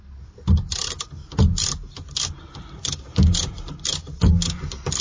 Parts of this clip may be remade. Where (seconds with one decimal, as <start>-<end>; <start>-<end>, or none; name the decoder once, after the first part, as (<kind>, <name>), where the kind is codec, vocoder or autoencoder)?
none